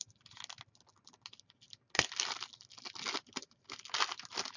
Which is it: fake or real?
real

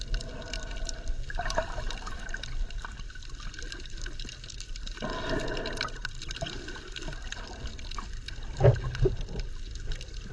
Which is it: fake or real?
real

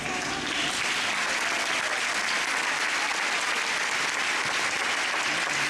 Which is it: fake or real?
real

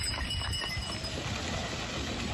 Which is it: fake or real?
real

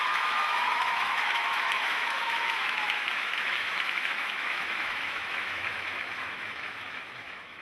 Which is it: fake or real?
fake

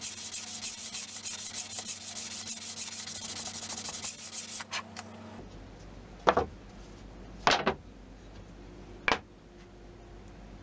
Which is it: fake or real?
real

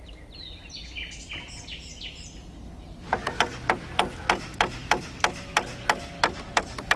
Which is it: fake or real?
real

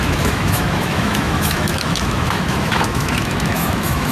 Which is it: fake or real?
fake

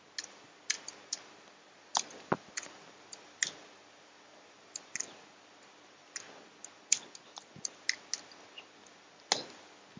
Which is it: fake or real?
real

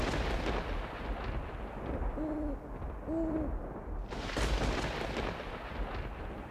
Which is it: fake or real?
real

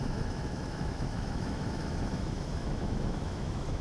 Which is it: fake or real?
fake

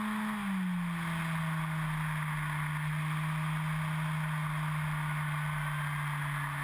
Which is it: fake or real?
real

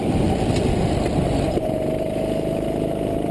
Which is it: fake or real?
real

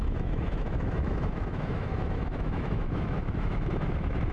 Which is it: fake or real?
fake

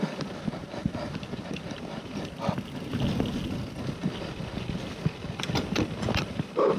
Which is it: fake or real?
real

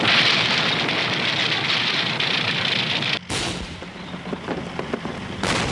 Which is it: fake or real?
real